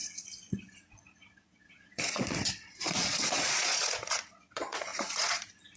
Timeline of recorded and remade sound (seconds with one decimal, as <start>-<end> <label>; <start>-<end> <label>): 0.0-5.8 remade